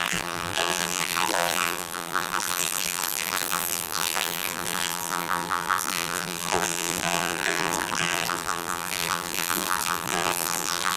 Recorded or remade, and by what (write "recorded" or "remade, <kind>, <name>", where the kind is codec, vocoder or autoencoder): remade, vocoder, BigVGAN v2